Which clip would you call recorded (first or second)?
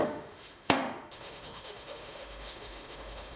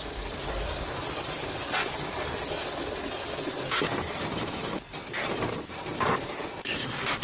second